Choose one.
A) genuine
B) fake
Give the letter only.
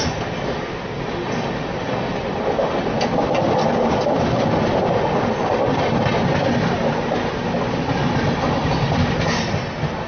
A